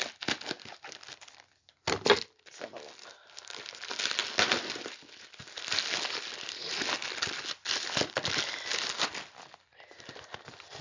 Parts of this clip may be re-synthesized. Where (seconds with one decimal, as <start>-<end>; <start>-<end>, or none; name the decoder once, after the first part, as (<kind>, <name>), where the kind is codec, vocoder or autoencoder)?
none